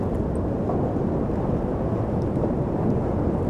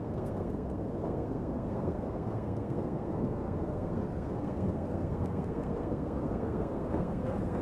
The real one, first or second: first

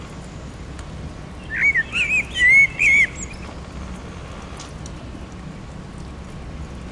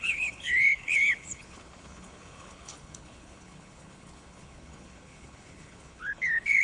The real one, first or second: first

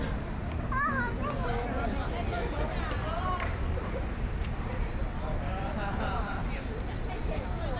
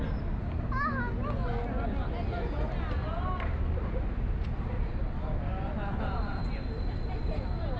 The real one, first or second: second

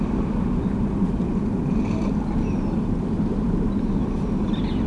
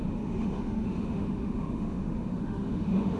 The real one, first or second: first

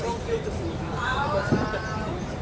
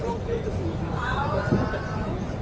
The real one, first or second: first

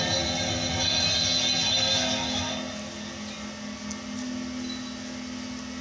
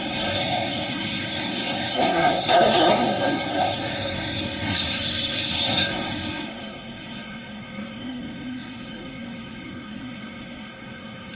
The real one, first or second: first